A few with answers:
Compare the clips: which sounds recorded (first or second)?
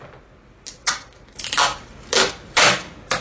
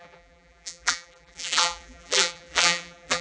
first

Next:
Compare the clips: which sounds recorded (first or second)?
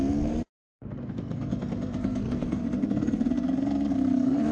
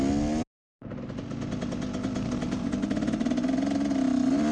second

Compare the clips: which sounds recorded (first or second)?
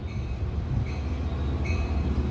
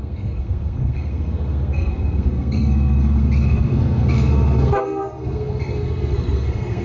first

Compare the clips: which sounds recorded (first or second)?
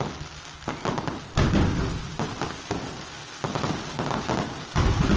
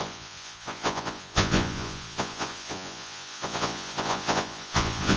first